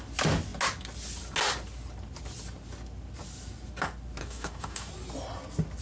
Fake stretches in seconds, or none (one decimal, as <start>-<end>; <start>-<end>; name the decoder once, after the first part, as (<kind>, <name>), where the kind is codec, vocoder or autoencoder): 4.2-4.9 (codec, DAC)